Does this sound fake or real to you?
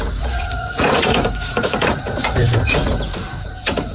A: fake